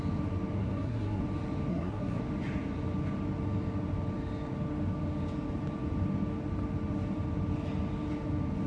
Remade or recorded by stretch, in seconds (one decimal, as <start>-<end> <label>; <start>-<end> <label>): 0.0-0.6 recorded; 0.6-1.2 remade; 1.2-1.7 recorded; 1.7-2.2 remade; 2.2-8.7 recorded